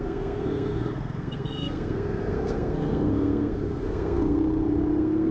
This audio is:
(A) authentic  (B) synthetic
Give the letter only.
B